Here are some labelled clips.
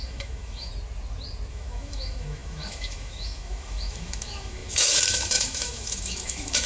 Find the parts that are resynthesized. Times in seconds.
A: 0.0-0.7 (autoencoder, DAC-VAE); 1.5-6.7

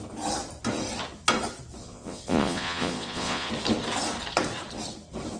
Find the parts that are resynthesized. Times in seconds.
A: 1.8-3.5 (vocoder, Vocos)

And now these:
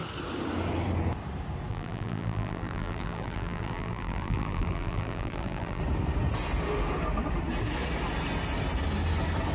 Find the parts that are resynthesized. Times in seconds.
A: 1.7-5.8 (vocoder, BigVGAN v2)

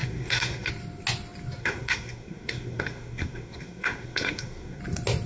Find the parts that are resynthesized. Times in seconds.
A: 0.0-0.7 (codec, SNAC); 1.6-4.8

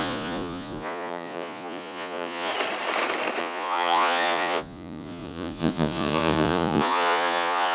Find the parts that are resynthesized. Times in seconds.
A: 0.0-2.5 (vocoder, Vocos); 3.4-7.7